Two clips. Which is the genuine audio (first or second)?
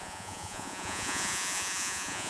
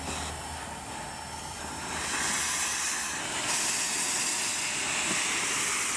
second